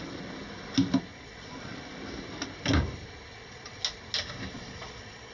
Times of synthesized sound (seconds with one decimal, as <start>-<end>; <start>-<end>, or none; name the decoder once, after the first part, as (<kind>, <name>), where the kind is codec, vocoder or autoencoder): 1.1-2.0 (vocoder, Vocos); 3.3-3.8; 4.5-5.3